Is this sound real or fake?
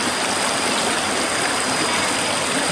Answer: real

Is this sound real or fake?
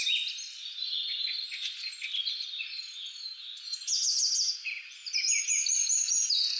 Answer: real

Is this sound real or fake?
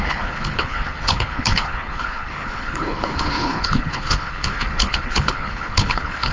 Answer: fake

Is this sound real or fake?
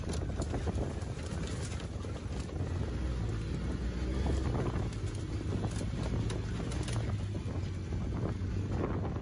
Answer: real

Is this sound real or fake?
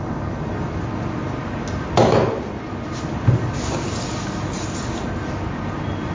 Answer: real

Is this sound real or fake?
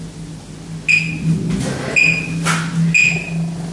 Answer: real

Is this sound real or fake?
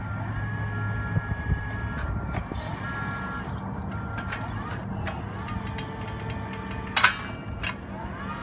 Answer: real